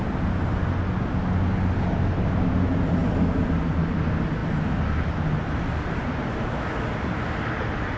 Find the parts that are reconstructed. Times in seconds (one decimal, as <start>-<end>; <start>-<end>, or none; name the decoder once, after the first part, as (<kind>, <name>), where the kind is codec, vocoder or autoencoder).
none